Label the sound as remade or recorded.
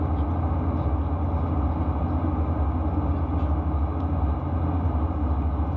recorded